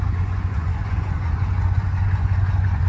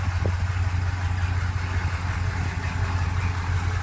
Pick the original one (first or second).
second